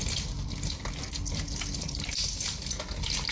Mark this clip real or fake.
real